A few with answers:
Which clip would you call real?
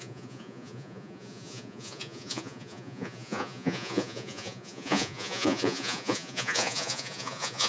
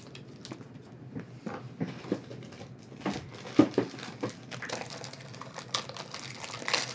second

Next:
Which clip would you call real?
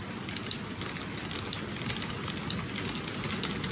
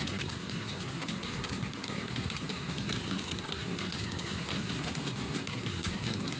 first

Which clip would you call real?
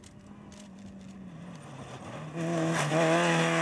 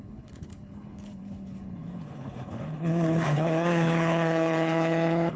first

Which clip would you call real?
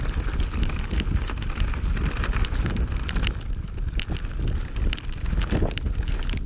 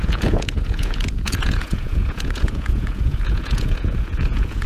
first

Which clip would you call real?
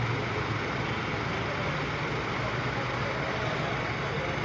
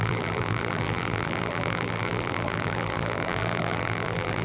first